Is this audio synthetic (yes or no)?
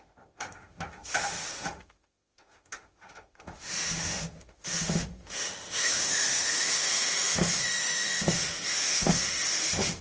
yes